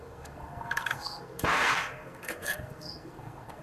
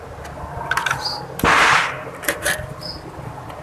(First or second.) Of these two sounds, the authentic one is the second